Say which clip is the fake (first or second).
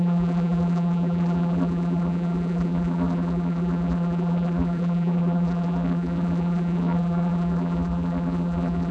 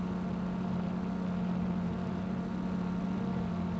first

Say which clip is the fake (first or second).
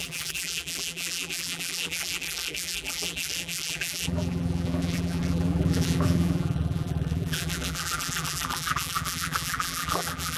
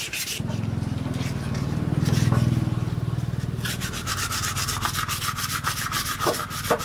first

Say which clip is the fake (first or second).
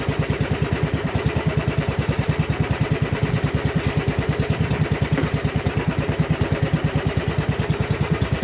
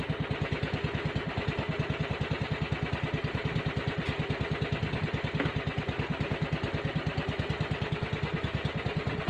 first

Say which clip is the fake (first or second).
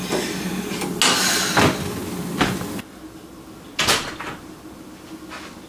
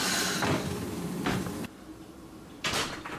second